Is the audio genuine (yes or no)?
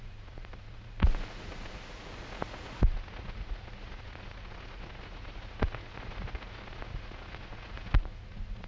no